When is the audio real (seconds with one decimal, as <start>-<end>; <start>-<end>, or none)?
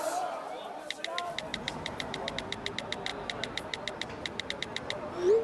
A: 0.0-1.5; 2.3-5.4